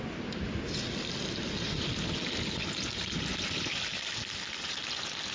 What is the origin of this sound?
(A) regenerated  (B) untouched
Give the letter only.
B